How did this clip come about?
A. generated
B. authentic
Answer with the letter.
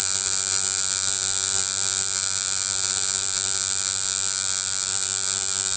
A